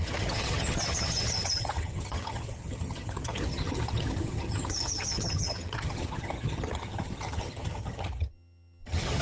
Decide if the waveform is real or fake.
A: fake